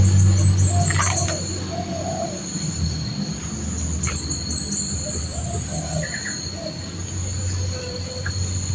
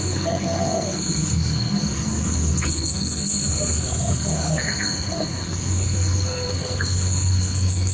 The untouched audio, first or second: first